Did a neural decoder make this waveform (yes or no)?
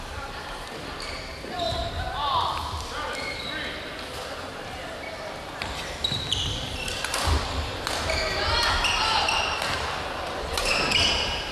yes